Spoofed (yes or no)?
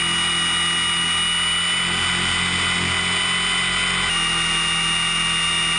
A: no